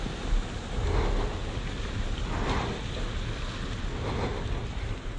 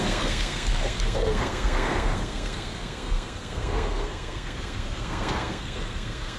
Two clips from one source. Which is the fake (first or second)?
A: second